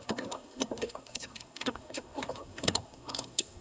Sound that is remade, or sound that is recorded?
remade